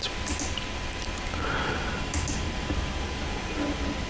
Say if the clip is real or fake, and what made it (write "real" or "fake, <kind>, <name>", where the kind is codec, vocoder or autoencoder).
real